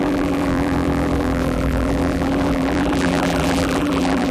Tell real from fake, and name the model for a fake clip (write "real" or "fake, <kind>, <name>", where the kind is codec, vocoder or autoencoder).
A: fake, vocoder, BigVGAN v2